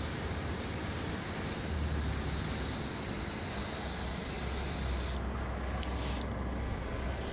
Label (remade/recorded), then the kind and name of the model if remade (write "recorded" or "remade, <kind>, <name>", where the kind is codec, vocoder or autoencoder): recorded